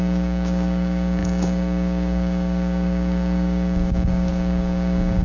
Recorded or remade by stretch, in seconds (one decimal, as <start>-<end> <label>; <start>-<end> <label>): 0.0-5.2 remade